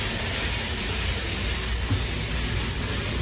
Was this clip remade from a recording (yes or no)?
no